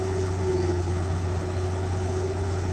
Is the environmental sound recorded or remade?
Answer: remade